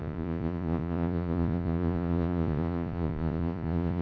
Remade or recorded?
remade